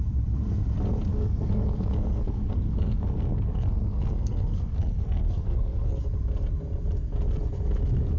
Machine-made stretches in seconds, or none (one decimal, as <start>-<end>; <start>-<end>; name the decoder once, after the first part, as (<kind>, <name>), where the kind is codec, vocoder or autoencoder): 1.1-6.0 (codec, SNAC)